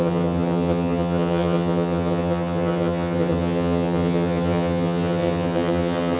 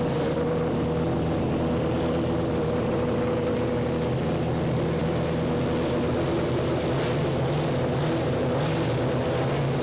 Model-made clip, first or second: first